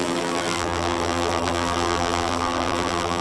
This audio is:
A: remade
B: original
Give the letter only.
A